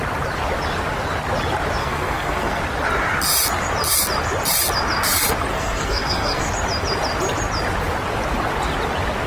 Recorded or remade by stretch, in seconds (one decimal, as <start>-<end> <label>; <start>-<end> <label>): 0.0-1.8 recorded; 1.8-2.6 remade; 2.6-5.5 recorded; 5.5-6.5 remade; 6.5-9.3 recorded